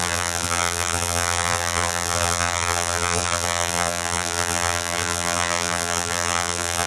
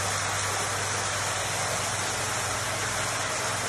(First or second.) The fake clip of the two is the first